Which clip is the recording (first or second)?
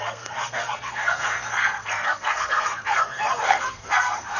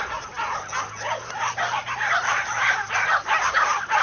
second